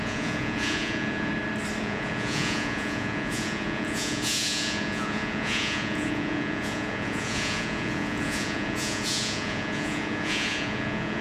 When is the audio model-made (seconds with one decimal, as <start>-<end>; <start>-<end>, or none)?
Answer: 0.0-1.3; 1.8-11.2